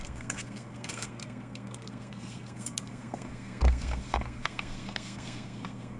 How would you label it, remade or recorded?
remade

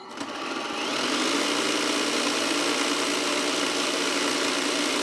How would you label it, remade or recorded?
recorded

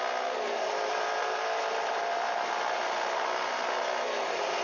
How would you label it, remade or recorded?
recorded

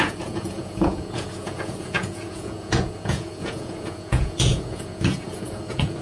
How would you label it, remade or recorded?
remade